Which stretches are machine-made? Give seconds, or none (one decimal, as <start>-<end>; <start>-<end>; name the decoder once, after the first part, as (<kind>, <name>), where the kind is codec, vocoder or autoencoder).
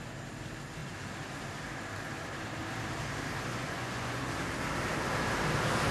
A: 3.5-4.3 (vocoder, Vocos)